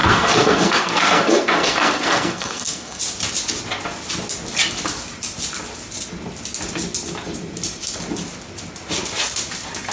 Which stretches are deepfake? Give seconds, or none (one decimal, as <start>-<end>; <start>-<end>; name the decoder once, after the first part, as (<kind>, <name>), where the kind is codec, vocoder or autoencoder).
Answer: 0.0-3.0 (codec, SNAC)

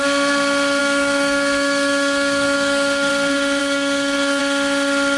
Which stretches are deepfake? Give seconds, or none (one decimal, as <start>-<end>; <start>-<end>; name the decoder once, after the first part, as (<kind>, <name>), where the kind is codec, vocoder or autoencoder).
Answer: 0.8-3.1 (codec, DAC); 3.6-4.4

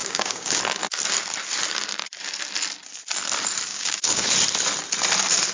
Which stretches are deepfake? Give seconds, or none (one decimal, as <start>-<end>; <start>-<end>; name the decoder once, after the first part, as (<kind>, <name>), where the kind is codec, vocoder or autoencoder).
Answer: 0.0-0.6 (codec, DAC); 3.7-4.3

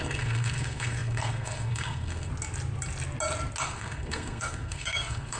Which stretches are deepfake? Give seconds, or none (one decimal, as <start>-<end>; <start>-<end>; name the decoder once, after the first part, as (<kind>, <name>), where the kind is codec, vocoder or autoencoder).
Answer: 0.0-2.3 (codec, SNAC); 3.6-5.4